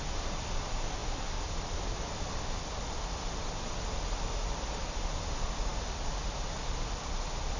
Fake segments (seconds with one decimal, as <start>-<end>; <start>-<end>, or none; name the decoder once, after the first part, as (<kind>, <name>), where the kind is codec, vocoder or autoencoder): none